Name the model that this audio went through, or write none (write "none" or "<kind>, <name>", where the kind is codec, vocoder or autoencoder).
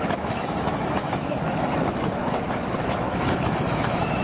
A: autoencoder, DAC-VAE